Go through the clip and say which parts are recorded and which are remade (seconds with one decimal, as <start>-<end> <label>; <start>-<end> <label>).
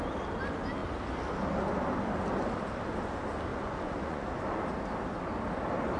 0.0-3.5 recorded; 3.5-4.3 remade; 4.3-6.0 recorded